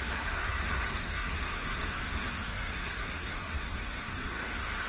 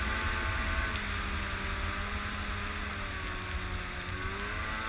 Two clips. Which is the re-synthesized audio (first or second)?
first